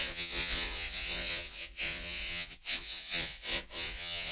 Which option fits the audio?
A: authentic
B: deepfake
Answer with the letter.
B